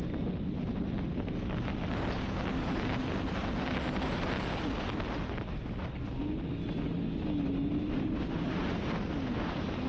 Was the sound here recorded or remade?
recorded